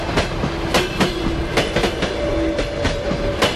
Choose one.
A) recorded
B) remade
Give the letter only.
A